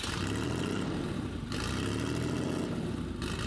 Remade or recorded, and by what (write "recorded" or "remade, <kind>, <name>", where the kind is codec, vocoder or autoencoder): recorded